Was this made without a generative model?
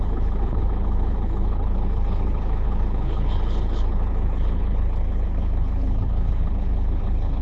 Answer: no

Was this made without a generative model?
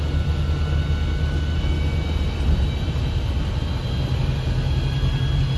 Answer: yes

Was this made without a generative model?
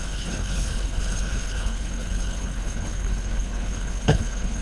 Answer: no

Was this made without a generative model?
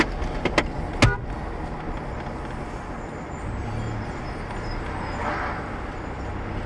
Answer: yes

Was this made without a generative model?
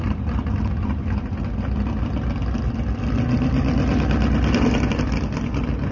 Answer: yes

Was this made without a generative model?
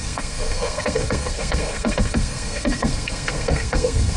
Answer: no